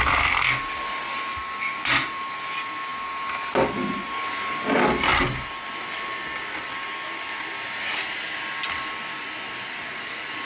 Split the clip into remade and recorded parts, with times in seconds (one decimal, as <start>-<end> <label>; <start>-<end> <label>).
0.0-10.5 recorded